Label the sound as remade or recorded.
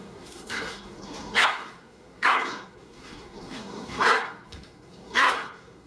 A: remade